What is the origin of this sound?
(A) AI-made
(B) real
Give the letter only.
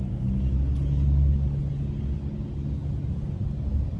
B